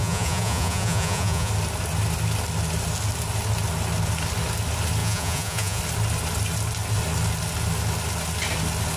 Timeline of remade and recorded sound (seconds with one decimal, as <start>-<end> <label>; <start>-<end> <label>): 0.0-1.5 remade; 1.5-5.0 recorded; 5.0-5.8 remade; 5.8-9.0 recorded